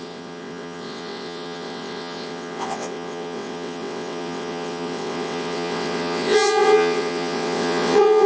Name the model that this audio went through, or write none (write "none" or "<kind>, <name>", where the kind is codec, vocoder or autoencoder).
vocoder, WaveNeXt